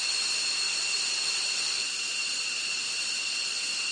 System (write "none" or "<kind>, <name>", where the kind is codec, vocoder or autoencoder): vocoder, BigVGAN v2